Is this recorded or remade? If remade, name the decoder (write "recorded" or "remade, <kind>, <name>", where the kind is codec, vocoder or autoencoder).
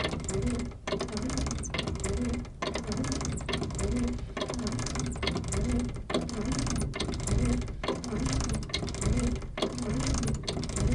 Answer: recorded